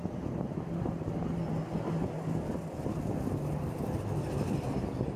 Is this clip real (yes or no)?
yes